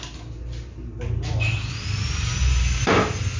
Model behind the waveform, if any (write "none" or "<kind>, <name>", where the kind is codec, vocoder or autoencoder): none